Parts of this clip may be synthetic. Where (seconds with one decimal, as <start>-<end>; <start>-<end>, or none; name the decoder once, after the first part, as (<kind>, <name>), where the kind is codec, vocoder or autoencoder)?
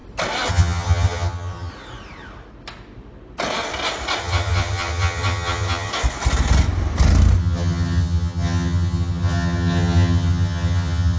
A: 0.5-1.7 (vocoder, HiFi-GAN); 4.2-5.9; 7.4-11.2